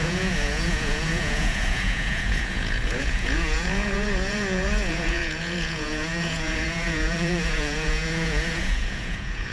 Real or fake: fake